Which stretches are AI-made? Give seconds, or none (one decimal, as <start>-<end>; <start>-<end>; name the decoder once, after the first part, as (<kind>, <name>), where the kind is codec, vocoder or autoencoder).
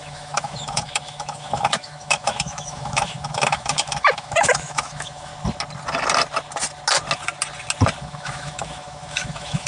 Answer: 0.0-5.3 (autoencoder, DAC-VAE); 8.0-9.7